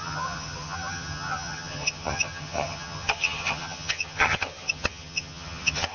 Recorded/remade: remade